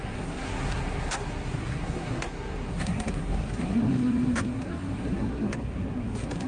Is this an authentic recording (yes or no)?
no